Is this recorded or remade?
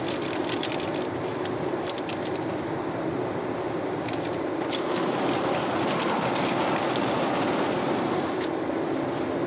remade